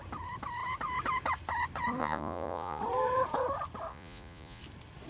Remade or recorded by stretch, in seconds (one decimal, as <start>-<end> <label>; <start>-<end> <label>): 0.0-2.0 recorded; 2.0-2.8 remade; 2.8-3.9 recorded; 3.9-4.6 remade; 4.6-5.1 recorded